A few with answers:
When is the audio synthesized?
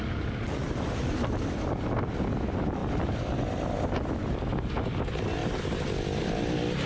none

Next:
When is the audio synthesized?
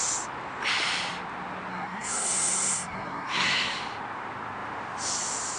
1.7-3.8 (codec, SNAC)